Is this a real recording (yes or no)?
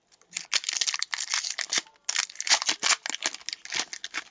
yes